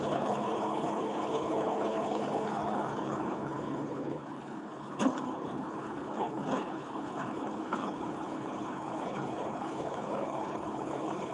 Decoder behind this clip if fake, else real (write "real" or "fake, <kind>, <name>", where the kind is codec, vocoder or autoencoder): fake, codec, HILCodec